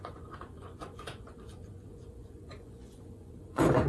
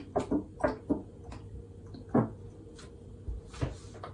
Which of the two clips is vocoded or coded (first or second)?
first